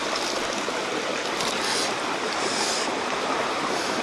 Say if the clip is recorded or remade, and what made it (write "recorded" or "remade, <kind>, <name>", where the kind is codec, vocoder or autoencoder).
recorded